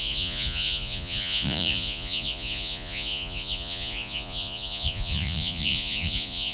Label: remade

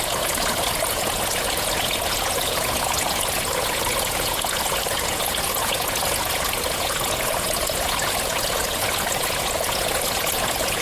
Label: remade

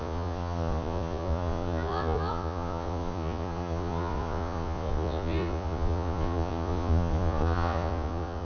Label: remade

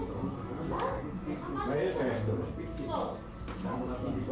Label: recorded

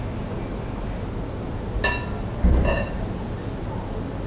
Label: recorded